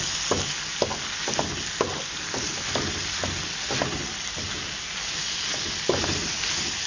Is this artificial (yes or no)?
no